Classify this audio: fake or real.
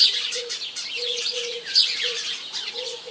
fake